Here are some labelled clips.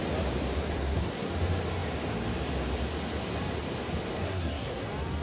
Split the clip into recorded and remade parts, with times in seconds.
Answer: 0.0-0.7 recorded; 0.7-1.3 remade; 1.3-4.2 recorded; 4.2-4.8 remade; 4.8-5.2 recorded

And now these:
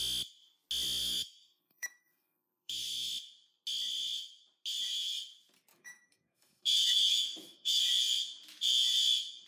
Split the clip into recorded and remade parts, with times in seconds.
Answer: 0.0-1.0 recorded; 1.0-3.1 remade; 3.1-5.7 recorded; 5.7-7.8 remade; 7.8-9.5 recorded

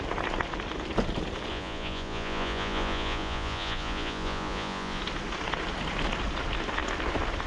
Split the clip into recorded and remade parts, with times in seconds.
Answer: 0.0-1.5 recorded; 1.5-5.0 remade; 5.0-7.5 recorded

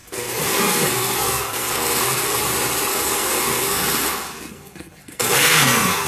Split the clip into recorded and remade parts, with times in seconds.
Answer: 0.0-2.4 remade; 2.4-2.9 recorded; 2.9-6.1 remade

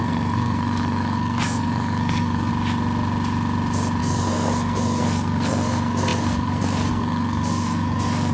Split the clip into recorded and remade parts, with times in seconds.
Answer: 0.0-2.5 remade; 2.5-4.0 recorded; 4.0-8.3 remade

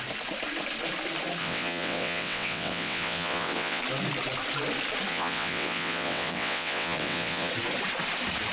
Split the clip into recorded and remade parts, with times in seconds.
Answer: 0.0-1.4 recorded; 1.4-3.8 remade; 3.8-5.1 recorded; 5.1-7.5 remade; 7.5-8.5 recorded

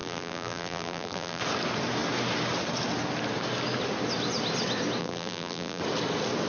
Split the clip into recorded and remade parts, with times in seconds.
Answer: 0.0-1.4 remade; 1.4-5.0 recorded; 5.0-5.8 remade; 5.8-6.5 recorded

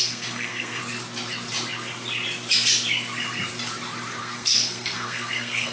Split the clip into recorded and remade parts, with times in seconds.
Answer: 0.0-0.8 remade; 0.8-4.2 recorded; 4.2-5.7 remade